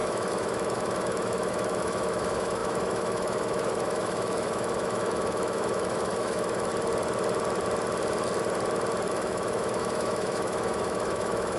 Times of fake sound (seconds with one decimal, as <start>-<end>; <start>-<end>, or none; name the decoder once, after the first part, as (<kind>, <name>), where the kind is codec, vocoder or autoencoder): 0.0-6.7 (autoencoder, DAC-VAE); 9.1-11.6